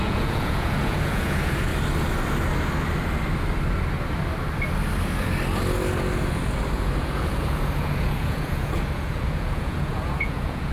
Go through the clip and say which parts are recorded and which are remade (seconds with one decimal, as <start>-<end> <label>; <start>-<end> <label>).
0.0-1.7 remade; 1.7-6.7 recorded; 6.7-10.7 remade